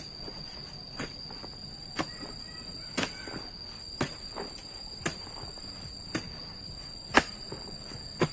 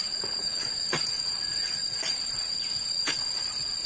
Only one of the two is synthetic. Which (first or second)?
second